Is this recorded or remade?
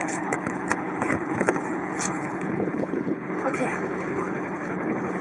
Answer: remade